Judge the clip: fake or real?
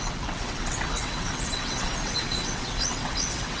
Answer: fake